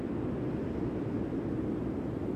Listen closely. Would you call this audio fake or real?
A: real